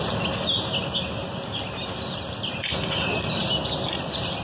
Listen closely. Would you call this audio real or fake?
real